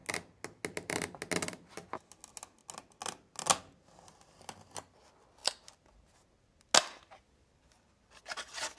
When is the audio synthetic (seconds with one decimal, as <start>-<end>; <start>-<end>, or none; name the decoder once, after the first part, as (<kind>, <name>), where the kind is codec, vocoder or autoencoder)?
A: none